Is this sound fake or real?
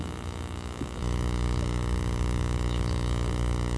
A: fake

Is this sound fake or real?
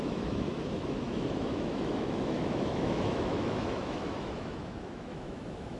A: fake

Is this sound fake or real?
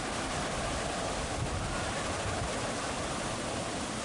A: real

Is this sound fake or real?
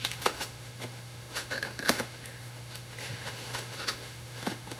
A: fake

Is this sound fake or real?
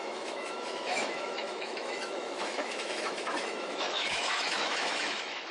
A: fake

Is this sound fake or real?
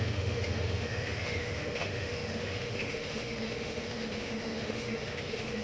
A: fake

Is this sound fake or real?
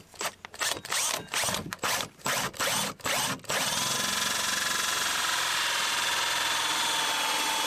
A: real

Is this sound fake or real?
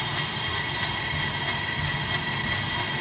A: real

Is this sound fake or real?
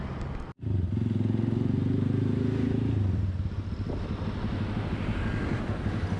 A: real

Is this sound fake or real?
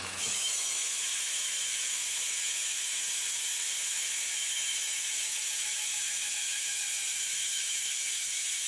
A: fake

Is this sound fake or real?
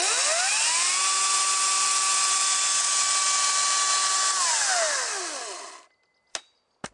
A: real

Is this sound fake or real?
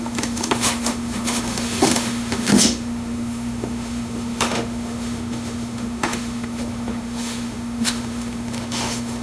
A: fake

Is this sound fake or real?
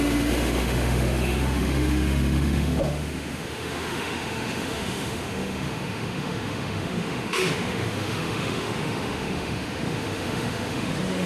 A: fake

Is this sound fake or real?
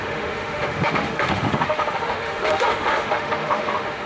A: fake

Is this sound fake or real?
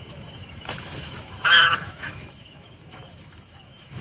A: fake